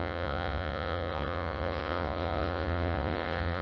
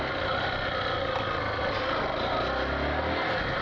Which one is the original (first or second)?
second